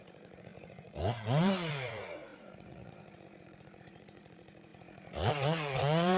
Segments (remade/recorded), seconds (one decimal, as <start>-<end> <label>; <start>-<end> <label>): 0.0-6.2 remade